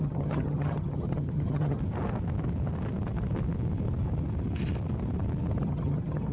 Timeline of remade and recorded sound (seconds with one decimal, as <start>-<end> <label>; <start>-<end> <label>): 0.0-1.8 remade; 1.8-5.6 recorded; 5.6-6.3 remade